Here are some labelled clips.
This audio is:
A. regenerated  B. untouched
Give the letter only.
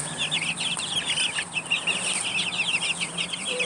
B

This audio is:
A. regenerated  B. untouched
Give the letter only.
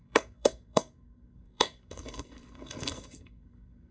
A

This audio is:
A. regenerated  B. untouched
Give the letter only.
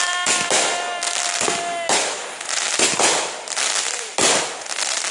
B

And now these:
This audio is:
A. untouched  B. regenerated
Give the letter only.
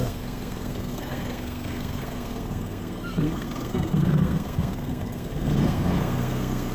B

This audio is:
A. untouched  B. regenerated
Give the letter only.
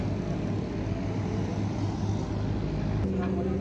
A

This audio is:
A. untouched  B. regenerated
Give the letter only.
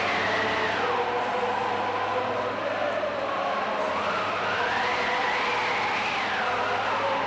A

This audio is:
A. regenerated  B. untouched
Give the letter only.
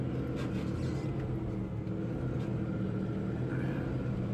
B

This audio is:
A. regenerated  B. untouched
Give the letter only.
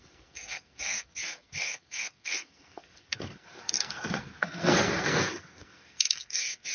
A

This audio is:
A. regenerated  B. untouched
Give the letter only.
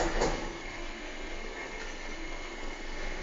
A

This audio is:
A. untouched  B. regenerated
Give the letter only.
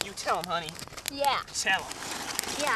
A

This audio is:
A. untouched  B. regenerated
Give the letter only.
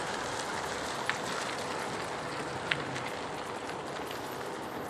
A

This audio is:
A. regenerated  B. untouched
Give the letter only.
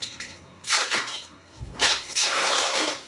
A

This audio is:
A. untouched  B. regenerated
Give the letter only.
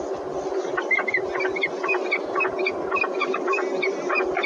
A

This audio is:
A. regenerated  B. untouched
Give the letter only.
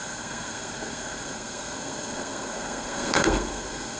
A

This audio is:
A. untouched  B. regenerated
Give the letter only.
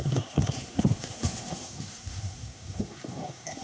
B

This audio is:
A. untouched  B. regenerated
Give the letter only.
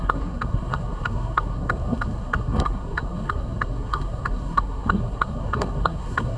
B